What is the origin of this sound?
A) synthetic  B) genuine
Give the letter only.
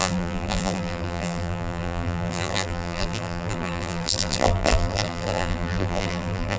A